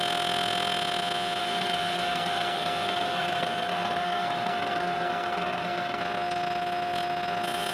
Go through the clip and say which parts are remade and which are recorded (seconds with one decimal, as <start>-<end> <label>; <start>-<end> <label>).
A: 0.0-1.4 recorded; 1.4-6.0 remade; 6.0-7.7 recorded